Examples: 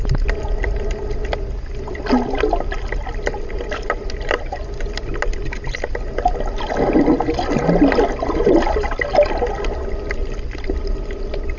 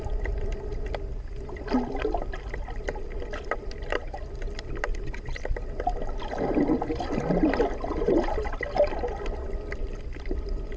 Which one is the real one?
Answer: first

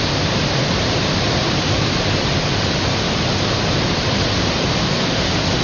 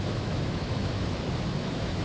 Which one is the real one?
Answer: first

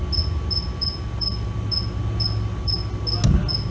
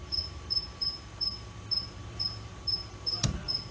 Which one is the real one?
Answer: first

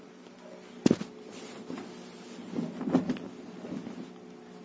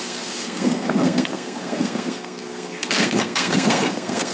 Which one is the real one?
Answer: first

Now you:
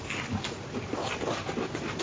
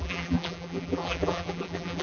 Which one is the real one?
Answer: first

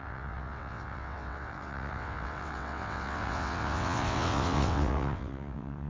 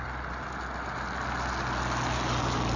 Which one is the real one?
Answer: second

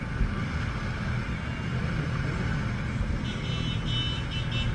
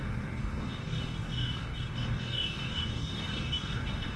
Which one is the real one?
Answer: first